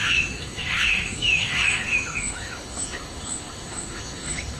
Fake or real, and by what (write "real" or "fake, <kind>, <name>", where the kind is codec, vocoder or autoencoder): fake, autoencoder, DAC-VAE